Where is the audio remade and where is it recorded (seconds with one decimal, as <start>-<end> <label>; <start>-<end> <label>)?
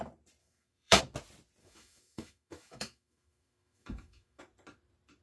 0.0-0.4 recorded; 0.4-1.0 remade; 1.0-1.6 recorded; 1.6-4.4 remade; 4.4-5.2 recorded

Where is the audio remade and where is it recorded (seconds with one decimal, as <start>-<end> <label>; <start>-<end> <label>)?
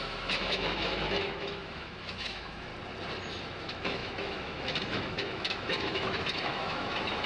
0.0-2.7 remade; 2.7-3.4 recorded; 3.4-7.3 remade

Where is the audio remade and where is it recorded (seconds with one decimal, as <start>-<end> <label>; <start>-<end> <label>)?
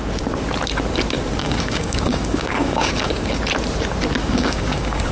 0.0-1.4 recorded; 1.4-3.4 remade; 3.4-4.2 recorded; 4.2-5.1 remade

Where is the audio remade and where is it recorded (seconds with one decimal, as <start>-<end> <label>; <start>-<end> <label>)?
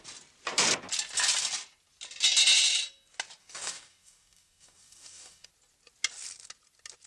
0.0-3.4 recorded; 3.4-5.5 remade; 5.5-7.1 recorded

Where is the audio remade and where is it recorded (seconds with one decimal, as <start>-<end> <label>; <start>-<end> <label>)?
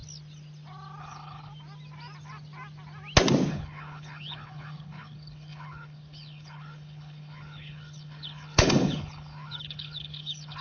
0.0-1.0 recorded; 1.0-1.5 remade; 1.5-3.5 recorded; 3.5-10.6 remade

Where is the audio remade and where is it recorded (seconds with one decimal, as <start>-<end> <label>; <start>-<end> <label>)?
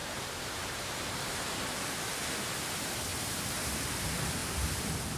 0.0-1.4 remade; 1.4-3.1 recorded; 3.1-3.7 remade; 3.7-5.2 recorded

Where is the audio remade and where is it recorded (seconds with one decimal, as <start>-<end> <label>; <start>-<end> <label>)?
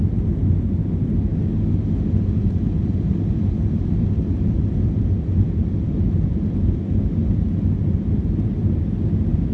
0.0-9.5 recorded